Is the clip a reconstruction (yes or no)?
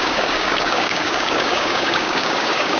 yes